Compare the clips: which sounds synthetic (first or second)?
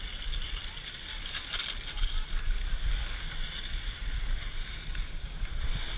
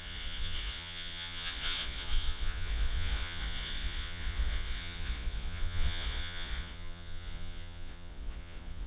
second